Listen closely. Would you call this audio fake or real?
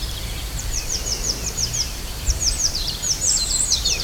fake